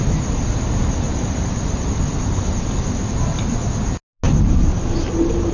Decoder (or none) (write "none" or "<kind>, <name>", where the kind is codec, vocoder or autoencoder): none